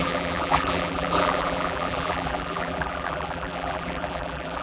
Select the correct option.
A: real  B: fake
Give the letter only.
B